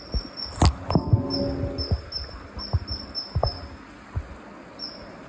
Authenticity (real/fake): real